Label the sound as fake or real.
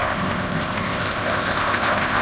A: fake